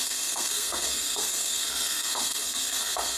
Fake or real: fake